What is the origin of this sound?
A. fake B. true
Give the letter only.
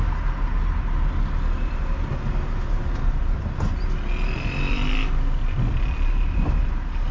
B